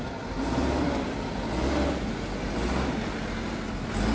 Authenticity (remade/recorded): recorded